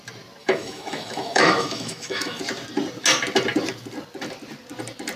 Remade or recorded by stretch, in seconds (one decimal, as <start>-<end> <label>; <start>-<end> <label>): 0.0-0.4 recorded; 0.4-2.4 remade; 2.4-5.2 recorded